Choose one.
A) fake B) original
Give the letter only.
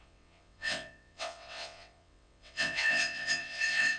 A